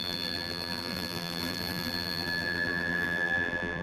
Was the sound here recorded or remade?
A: remade